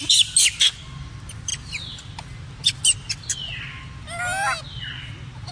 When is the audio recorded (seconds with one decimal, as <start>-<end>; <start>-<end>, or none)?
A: 0.0-5.5